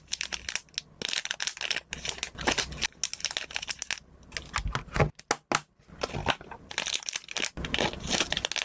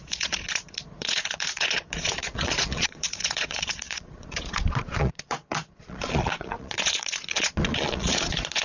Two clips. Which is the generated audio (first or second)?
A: second